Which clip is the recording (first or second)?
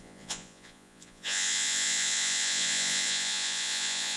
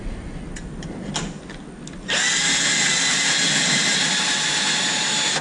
second